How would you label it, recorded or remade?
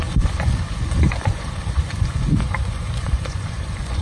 remade